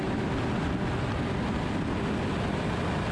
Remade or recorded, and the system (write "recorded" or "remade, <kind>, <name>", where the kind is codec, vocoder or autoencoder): recorded